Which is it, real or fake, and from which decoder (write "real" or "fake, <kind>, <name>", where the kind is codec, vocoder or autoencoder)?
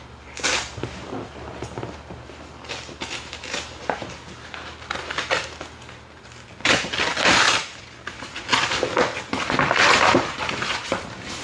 real